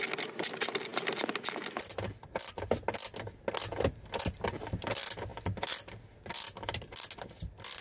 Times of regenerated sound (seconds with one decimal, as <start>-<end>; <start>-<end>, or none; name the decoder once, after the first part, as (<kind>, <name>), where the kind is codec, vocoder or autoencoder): none